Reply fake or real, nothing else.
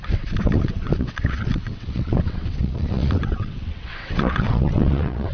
fake